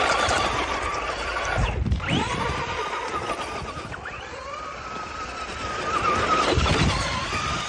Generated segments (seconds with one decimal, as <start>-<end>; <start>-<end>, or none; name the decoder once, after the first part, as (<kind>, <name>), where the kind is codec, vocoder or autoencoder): 0.0-7.7 (vocoder, BigVGAN v2)